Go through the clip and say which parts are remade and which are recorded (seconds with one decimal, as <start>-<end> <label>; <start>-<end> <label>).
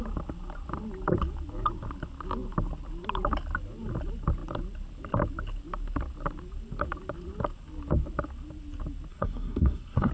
0.0-9.1 recorded; 9.1-10.1 remade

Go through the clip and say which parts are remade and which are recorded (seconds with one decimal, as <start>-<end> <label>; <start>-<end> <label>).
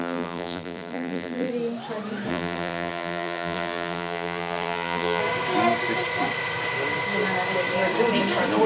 0.0-1.5 remade; 1.5-2.3 recorded; 2.3-5.2 remade; 5.2-8.7 recorded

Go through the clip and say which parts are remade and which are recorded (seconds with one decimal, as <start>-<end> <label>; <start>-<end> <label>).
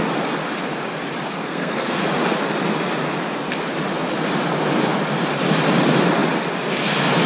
0.0-1.4 recorded; 1.4-2.0 remade; 2.0-7.3 recorded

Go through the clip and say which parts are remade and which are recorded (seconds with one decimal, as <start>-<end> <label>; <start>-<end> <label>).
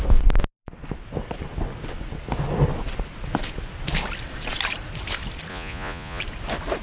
0.0-5.5 recorded; 5.5-6.2 remade; 6.2-6.8 recorded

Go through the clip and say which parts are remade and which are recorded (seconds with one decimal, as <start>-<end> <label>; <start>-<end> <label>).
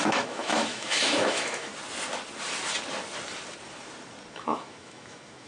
0.0-1.7 remade; 1.7-4.3 recorded; 4.3-5.5 remade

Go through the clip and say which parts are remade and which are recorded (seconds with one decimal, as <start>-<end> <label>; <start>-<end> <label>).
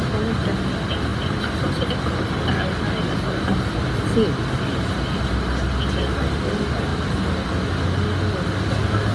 0.0-1.1 recorded; 1.1-1.9 remade; 1.9-9.1 recorded